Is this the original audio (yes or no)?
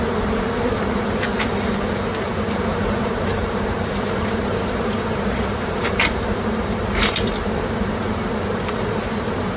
no